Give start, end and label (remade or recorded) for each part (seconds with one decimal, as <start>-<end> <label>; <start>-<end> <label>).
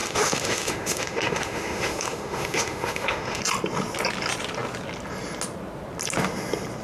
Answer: 0.0-3.4 remade; 3.4-6.8 recorded